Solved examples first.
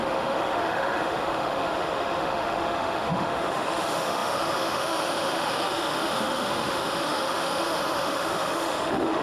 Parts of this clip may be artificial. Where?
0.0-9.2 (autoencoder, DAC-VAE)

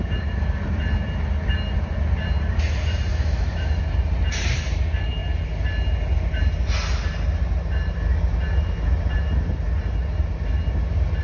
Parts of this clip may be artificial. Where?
3.1-3.8 (autoencoder, DAC-VAE)